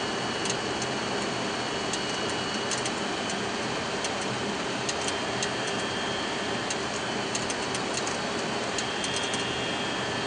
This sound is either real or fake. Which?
real